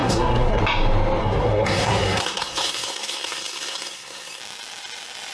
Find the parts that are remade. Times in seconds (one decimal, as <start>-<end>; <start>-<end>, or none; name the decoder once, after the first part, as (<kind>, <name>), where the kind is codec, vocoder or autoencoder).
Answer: 0.0-0.6 (codec, SNAC); 1.2-4.4